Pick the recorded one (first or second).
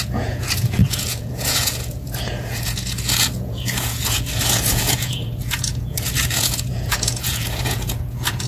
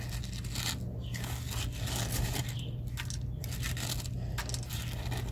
second